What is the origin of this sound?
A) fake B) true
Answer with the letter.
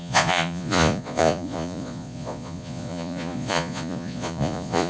A